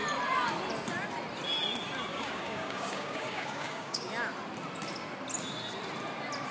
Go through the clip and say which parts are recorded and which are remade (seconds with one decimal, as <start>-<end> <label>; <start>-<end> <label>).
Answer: 0.0-2.1 recorded; 2.1-4.1 remade; 4.1-6.5 recorded